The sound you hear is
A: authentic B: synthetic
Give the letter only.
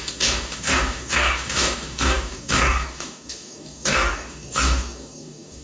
B